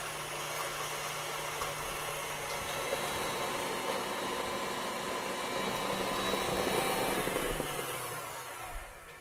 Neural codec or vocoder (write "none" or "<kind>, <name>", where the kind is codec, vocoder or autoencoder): none